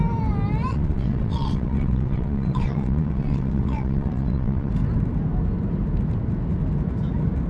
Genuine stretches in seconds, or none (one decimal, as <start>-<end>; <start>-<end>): 0.0-0.7; 4.7-7.5